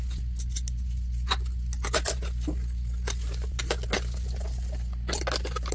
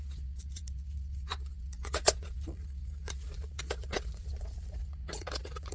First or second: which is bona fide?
first